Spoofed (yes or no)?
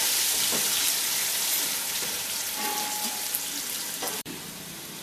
yes